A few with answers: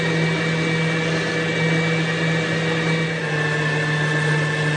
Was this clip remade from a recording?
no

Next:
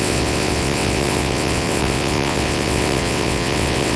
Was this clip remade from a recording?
yes